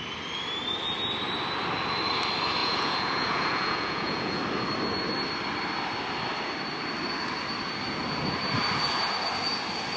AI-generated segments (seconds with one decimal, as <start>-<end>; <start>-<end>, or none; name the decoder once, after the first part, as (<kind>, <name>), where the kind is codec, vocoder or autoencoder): 2.6-4.4 (vocoder, Vocos)